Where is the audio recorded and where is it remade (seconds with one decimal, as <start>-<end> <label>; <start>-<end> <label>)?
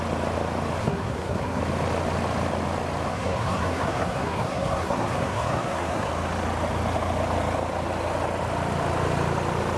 0.0-0.8 recorded; 0.8-1.6 remade; 1.6-3.1 recorded; 3.1-6.1 remade; 6.1-9.8 recorded